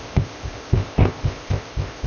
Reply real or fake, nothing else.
fake